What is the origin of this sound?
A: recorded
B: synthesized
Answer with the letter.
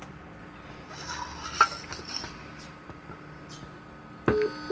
A